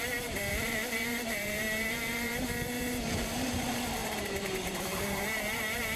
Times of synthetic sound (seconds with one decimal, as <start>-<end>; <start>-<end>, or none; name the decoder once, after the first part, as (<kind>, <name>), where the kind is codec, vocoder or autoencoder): 0.0-6.0 (vocoder, BigVGAN v2)